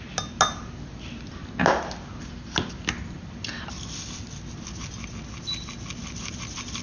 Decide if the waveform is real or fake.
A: real